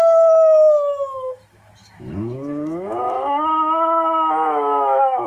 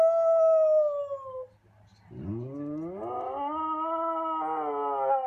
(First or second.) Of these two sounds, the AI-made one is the first